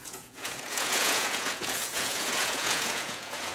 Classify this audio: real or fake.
fake